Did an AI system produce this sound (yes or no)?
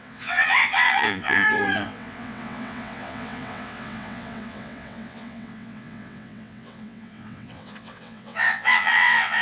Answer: yes